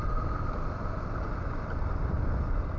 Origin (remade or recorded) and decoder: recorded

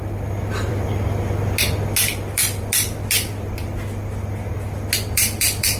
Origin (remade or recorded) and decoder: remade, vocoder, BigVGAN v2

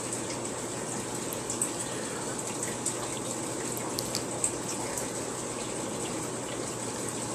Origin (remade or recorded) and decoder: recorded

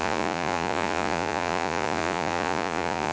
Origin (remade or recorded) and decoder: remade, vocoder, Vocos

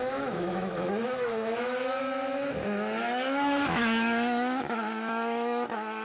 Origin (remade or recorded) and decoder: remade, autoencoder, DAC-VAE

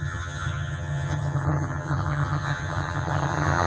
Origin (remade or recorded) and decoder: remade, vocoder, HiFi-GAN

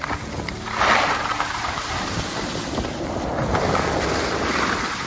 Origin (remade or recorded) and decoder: recorded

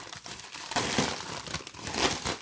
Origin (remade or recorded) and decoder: recorded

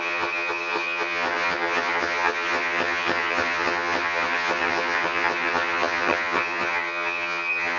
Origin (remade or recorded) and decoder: remade, vocoder, HiFi-GAN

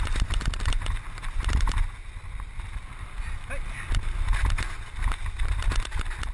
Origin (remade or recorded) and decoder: recorded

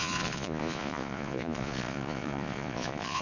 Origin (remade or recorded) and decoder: remade, vocoder, Vocos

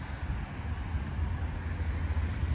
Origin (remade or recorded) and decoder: recorded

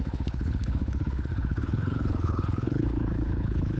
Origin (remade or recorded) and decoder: remade, codec, HILCodec